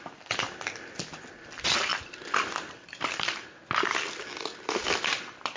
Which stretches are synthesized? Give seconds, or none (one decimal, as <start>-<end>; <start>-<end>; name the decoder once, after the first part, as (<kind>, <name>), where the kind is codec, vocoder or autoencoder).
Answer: none